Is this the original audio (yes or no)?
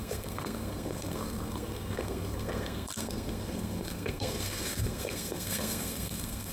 no